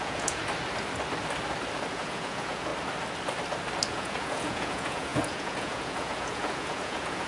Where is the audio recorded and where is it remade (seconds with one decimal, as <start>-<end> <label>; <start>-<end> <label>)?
0.0-0.4 remade; 0.4-1.9 recorded; 1.9-2.7 remade; 2.7-3.9 recorded; 3.9-7.3 remade